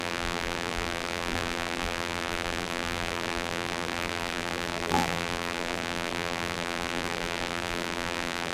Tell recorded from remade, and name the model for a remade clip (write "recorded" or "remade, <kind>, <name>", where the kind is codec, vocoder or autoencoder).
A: remade, vocoder, BigVGAN v2